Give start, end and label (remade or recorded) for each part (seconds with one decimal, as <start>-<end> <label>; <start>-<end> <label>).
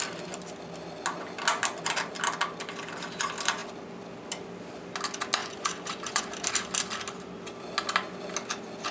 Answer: 0.0-5.4 recorded; 5.4-6.2 remade; 6.2-8.9 recorded